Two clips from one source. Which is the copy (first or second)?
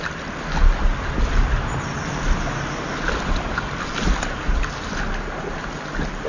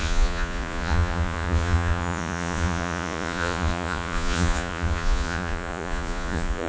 second